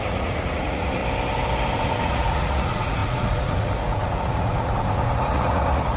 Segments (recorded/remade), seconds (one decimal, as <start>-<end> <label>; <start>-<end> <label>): 0.0-1.0 remade; 1.0-1.8 recorded; 1.8-6.0 remade